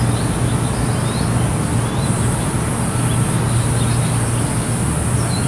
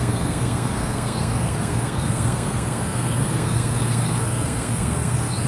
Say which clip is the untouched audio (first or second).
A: first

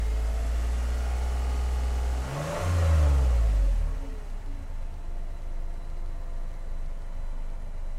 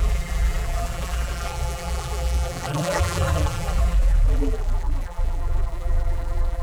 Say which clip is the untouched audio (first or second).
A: first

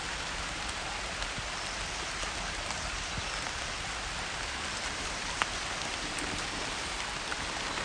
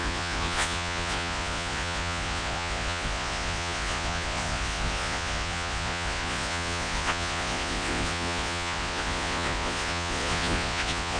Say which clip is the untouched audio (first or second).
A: first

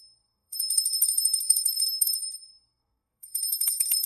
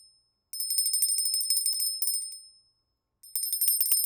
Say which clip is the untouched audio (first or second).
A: second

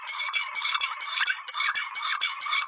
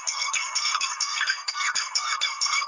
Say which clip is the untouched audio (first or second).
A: first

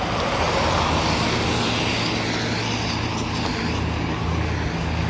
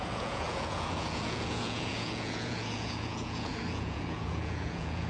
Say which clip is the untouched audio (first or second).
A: first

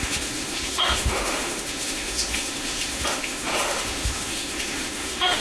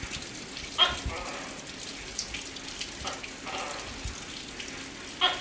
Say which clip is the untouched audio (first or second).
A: second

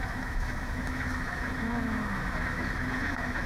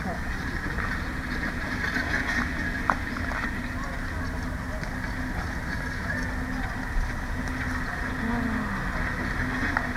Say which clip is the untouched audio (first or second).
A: second